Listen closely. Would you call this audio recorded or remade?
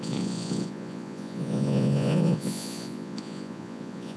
remade